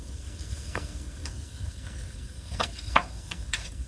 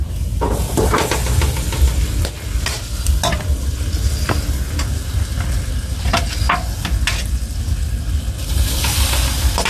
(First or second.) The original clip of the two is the second